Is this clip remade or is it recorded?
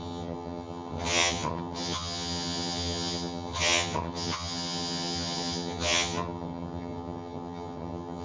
remade